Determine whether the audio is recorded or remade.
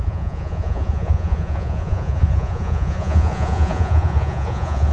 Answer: remade